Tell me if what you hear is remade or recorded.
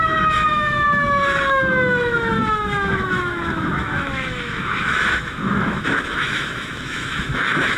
remade